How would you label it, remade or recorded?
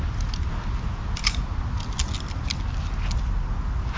recorded